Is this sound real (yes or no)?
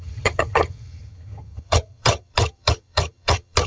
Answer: no